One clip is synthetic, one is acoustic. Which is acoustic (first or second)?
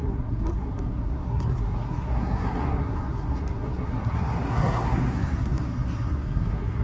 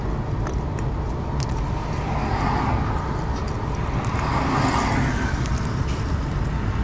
second